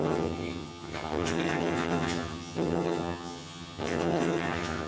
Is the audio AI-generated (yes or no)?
yes